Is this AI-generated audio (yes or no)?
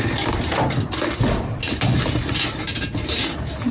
no